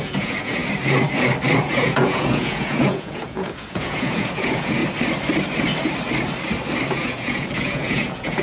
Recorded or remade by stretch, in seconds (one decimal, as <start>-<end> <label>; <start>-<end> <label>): 0.0-0.6 remade; 0.6-1.6 recorded; 1.6-4.8 remade; 4.8-6.9 recorded; 6.9-8.4 remade